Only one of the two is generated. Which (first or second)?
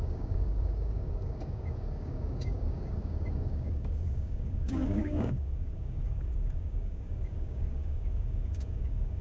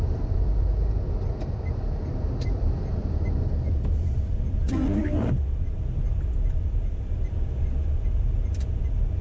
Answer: first